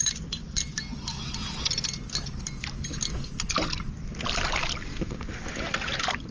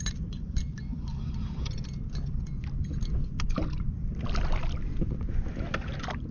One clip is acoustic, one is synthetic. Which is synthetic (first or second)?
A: second